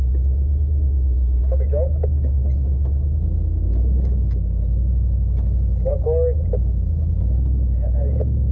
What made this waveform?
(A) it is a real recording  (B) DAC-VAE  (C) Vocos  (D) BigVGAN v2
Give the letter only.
A